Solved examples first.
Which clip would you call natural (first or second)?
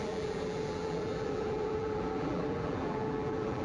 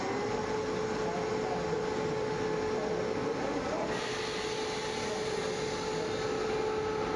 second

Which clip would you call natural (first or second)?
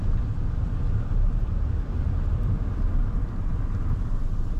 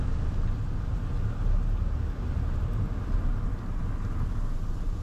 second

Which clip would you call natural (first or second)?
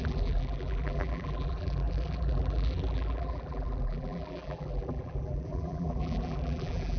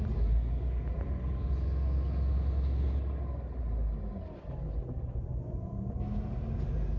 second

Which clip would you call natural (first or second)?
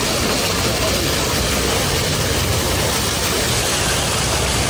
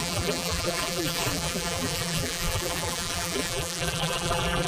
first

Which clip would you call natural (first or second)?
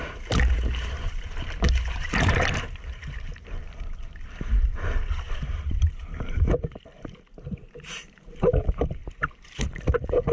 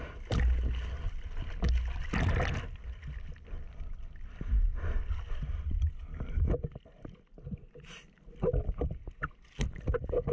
second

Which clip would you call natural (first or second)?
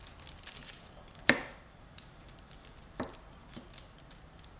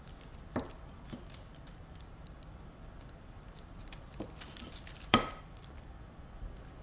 first